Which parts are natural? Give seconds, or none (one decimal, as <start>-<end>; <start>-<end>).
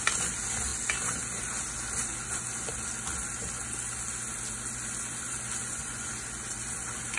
0.0-5.6; 6.1-7.2